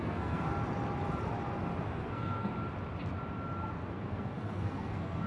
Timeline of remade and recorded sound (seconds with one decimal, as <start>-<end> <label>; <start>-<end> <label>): 0.0-0.5 remade; 0.5-1.8 recorded; 1.8-2.5 remade; 2.5-3.9 recorded; 3.9-5.3 remade